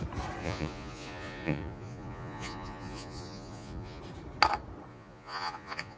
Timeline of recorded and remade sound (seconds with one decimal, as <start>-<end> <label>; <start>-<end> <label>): 0.0-0.4 recorded; 0.4-4.0 remade; 4.0-4.9 recorded; 4.9-6.0 remade